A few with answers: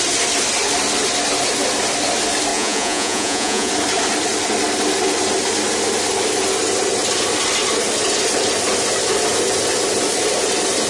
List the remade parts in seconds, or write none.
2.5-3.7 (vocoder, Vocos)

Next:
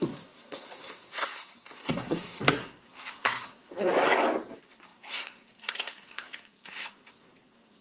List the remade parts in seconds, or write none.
0.0-3.9 (codec, SNAC); 4.5-7.8